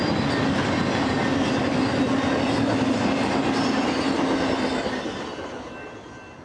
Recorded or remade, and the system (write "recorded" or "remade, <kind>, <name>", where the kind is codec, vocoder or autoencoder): recorded